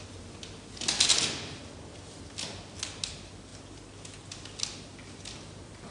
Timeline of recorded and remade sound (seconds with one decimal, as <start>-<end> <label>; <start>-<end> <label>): 0.0-5.9 recorded